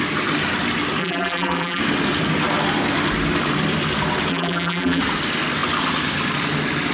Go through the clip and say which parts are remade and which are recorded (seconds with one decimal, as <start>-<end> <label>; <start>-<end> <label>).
0.0-1.0 recorded; 1.0-1.8 remade; 1.8-4.3 recorded; 4.3-5.0 remade; 5.0-6.9 recorded